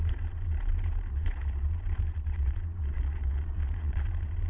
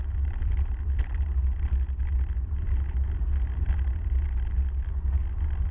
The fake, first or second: first